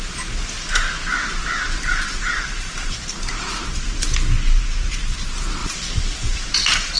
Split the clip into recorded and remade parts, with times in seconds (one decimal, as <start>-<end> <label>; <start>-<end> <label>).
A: 0.0-1.4 recorded; 1.4-3.5 remade; 3.5-5.6 recorded; 5.6-6.5 remade; 6.5-7.0 recorded